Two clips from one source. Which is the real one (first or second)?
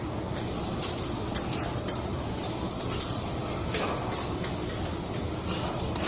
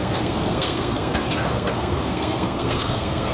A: first